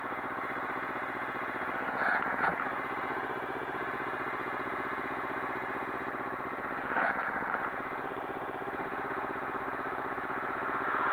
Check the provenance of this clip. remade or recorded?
remade